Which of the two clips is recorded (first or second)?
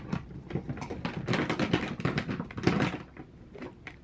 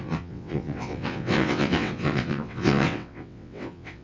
first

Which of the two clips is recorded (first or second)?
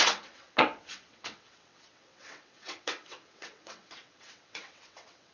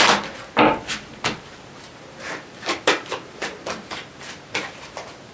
second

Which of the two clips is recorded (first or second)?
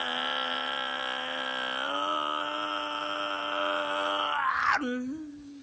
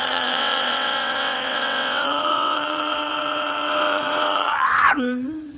first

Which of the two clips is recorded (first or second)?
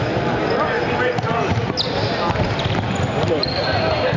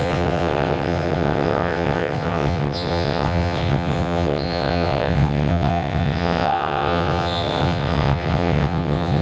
first